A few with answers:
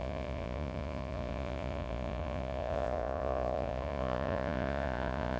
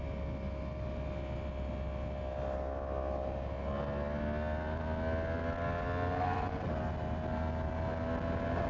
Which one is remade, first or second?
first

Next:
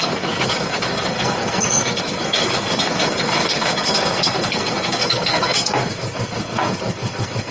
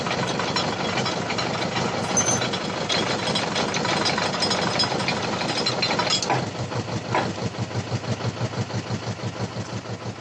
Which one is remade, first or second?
first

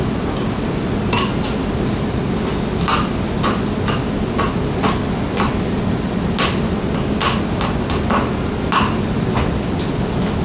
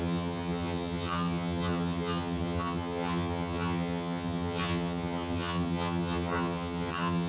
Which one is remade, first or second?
second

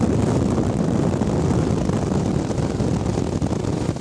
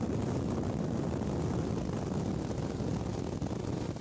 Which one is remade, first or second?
first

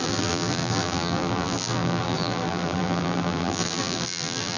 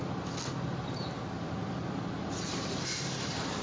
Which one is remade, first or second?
first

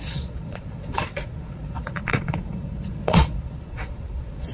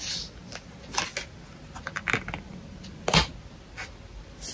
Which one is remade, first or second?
first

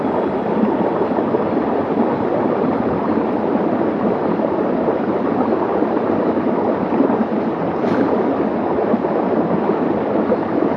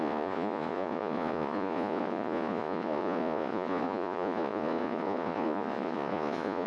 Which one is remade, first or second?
second